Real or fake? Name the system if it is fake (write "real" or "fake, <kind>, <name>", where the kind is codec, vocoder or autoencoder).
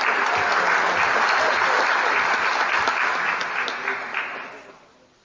real